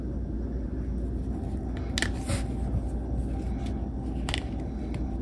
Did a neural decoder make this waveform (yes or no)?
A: no